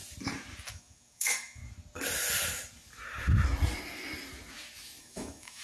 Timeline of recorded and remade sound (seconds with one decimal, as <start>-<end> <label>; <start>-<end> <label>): 0.0-0.7 recorded; 0.7-1.6 remade; 1.6-5.0 recorded; 5.0-5.6 remade